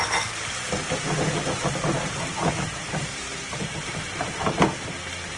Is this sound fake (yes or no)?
no